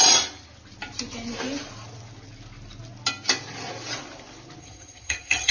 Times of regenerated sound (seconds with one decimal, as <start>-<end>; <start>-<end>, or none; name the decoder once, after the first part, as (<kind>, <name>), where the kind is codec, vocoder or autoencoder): 4.6-5.5 (vocoder, HiFi-GAN)